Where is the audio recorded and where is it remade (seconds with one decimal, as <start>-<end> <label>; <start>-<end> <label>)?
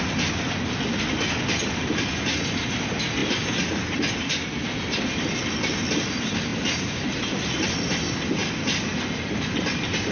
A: 0.0-10.1 recorded